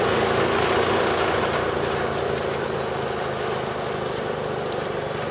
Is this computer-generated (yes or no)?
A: no